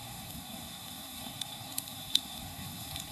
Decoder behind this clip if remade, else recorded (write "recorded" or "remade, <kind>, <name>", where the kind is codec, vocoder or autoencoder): remade, codec, SNAC